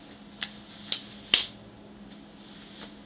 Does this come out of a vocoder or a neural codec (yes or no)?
no